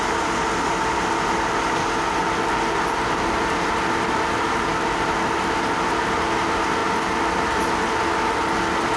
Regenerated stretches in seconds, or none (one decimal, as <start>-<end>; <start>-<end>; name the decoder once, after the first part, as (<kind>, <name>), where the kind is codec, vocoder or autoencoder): none